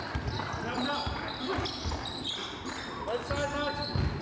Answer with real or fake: real